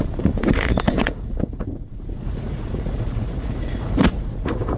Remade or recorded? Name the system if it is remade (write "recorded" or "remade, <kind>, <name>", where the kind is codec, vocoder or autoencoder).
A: remade, vocoder, Vocos